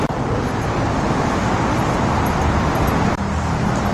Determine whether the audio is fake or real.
real